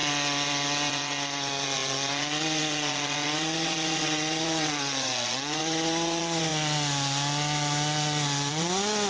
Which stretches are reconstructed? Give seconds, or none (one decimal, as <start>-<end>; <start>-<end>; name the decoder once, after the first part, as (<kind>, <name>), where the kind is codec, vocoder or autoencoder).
0.9-6.5 (vocoder, Vocos); 8.5-9.1

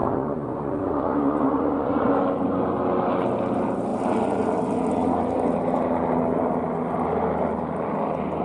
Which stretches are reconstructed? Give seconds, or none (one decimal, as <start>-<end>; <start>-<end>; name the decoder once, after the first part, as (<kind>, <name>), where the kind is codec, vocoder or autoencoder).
0.0-2.1 (vocoder, Vocos)

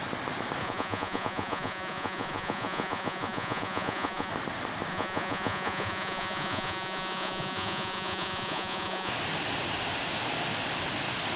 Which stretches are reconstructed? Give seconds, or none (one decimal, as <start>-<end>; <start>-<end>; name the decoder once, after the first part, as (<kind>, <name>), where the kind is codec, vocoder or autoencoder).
0.6-4.3 (vocoder, Vocos); 4.9-9.1

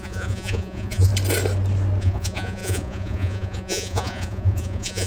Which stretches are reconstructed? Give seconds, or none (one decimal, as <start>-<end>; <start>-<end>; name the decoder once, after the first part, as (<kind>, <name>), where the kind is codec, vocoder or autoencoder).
0.0-1.1 (vocoder, Vocos); 2.0-5.1

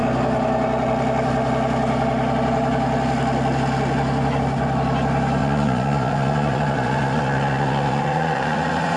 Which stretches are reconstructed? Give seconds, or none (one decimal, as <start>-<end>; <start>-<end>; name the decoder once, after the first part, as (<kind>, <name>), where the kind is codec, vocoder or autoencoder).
5.4-9.0 (vocoder, Vocos)

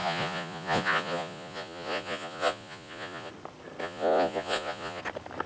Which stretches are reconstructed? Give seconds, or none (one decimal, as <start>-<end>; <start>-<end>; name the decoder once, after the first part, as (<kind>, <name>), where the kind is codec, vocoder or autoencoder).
0.0-3.3 (vocoder, Vocos); 3.8-5.0

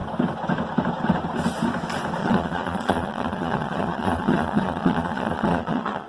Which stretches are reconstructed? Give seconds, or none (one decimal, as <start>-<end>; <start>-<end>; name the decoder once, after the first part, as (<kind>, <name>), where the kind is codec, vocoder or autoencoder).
2.2-6.1 (vocoder, Vocos)